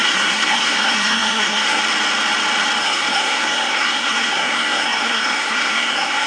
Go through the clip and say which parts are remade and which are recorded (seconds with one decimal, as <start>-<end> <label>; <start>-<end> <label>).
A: 0.0-1.8 remade; 1.8-2.8 recorded; 2.8-6.3 remade